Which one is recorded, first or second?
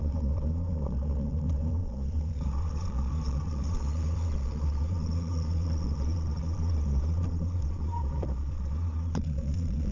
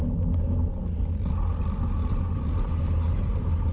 second